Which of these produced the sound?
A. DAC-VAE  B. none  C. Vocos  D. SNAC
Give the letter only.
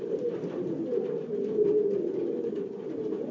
B